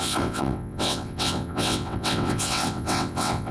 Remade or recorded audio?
remade